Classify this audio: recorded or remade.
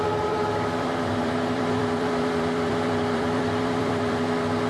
remade